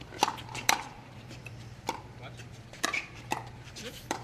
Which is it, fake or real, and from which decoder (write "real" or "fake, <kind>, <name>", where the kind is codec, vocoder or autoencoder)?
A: fake, vocoder, BigVGAN v2